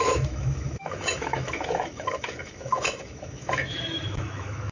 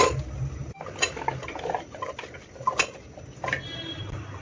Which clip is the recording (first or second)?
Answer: second